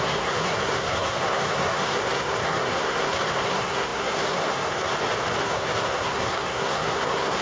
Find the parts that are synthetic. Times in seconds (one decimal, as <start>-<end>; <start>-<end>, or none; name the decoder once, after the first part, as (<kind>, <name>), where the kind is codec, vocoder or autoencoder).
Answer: 0.0-4.9 (codec, SNAC); 5.4-7.4